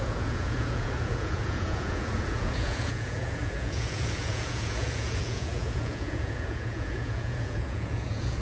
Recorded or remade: remade